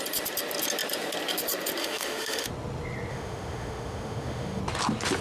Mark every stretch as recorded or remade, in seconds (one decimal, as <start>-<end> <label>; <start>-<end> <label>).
0.0-1.8 recorded; 1.8-2.5 remade; 2.5-3.1 recorded; 3.1-4.6 remade; 4.6-5.2 recorded